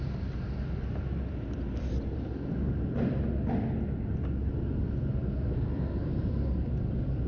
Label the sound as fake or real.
real